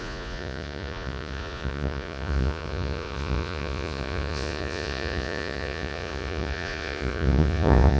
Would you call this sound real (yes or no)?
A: no